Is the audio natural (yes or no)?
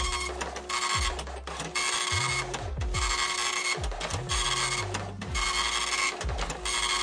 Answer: yes